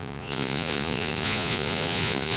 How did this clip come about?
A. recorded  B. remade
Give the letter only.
B